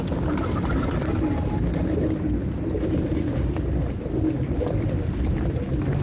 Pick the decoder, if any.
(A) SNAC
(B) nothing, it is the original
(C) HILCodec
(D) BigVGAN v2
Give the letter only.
B